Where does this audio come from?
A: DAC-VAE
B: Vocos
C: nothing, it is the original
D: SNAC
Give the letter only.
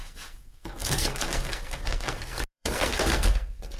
D